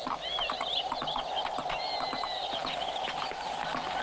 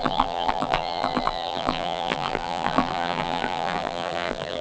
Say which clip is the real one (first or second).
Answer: first